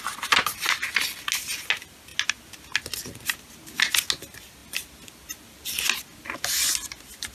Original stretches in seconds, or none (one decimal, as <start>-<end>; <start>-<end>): 0.0-7.3